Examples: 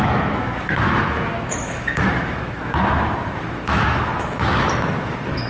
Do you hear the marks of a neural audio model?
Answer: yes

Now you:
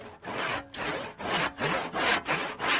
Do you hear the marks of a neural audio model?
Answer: no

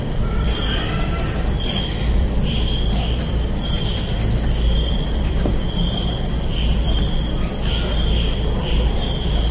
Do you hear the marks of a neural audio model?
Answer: yes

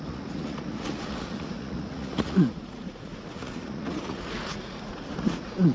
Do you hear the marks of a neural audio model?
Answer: yes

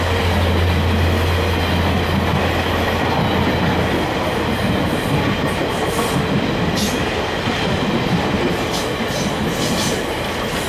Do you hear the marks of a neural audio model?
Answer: no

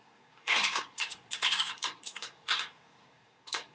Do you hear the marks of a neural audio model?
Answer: yes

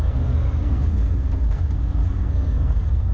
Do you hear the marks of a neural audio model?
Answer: yes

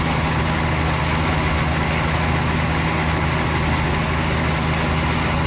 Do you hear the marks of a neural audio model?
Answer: no